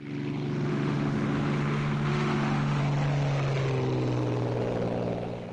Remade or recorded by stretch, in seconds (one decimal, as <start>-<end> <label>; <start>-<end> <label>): 0.0-0.7 recorded; 0.7-2.8 remade; 2.8-5.5 recorded